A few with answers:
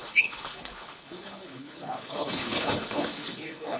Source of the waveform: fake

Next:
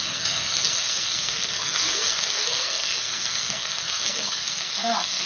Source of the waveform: fake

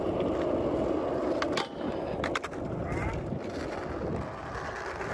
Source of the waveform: real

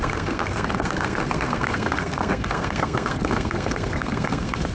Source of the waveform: fake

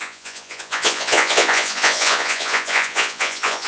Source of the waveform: fake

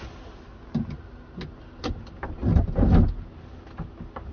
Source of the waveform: real